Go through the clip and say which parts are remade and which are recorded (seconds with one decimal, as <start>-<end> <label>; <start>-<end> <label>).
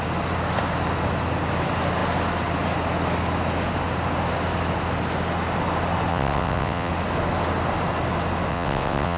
0.0-6.1 recorded; 6.1-6.9 remade; 6.9-8.5 recorded; 8.5-9.2 remade